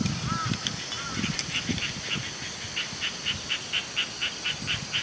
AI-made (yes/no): no